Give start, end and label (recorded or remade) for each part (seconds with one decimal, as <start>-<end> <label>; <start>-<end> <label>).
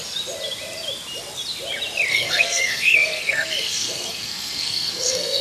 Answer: 0.0-2.1 recorded; 2.1-5.4 remade